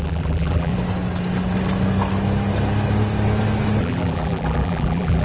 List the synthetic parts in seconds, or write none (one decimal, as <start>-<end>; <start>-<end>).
0.0-0.7; 3.8-5.2